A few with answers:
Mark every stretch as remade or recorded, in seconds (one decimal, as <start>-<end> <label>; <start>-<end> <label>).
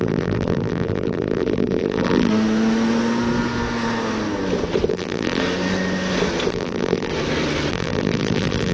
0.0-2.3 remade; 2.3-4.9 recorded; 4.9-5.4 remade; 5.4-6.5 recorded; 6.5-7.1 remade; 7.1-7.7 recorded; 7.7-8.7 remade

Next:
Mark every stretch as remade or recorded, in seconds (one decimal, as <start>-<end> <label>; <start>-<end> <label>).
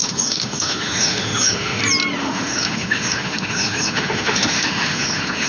0.0-1.8 remade; 1.8-2.2 recorded; 2.2-5.5 remade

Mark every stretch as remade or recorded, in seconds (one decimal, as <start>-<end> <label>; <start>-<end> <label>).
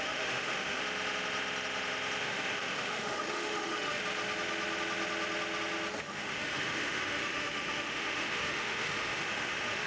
0.0-0.8 remade; 0.8-2.2 recorded; 2.2-4.0 remade; 4.0-6.0 recorded; 6.0-9.9 remade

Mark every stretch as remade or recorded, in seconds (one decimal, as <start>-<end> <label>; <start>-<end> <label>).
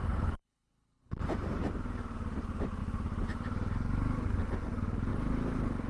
0.0-1.3 remade; 1.3-5.9 recorded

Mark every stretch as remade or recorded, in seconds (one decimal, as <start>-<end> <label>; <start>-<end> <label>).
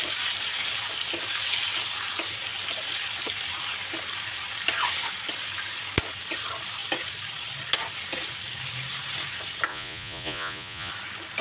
0.0-9.7 recorded; 9.7-10.9 remade; 10.9-11.4 recorded